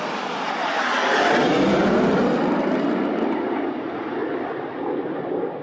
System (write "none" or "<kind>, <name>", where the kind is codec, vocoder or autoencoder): none